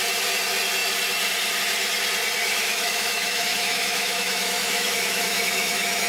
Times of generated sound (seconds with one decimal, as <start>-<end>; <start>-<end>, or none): 2.4-6.1